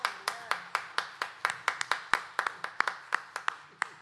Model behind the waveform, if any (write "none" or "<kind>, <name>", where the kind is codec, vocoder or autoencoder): none